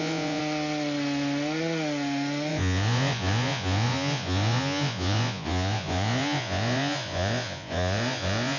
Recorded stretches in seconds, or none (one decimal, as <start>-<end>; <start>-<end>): 0.4-2.5